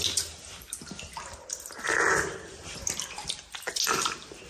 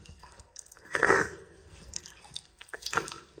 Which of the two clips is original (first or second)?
first